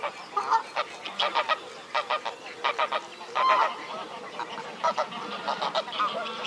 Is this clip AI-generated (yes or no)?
no